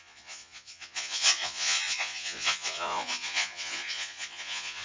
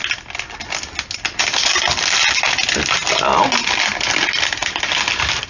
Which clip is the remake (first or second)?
first